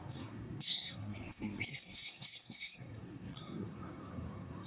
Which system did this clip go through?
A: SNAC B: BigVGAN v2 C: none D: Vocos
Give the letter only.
A